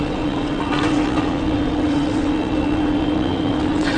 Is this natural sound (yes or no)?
no